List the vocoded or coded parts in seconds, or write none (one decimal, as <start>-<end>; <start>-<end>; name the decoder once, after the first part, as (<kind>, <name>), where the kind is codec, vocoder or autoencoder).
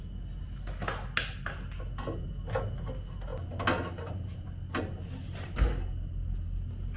none